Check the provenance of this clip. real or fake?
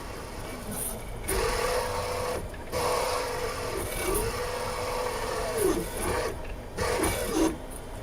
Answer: fake